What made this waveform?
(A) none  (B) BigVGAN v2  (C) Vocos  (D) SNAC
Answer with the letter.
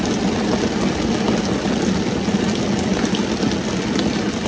A